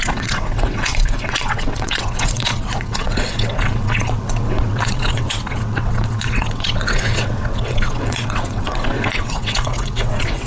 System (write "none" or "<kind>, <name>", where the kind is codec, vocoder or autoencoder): vocoder, WaveNeXt